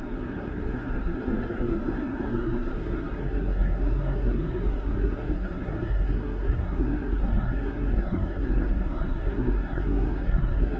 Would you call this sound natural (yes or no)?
no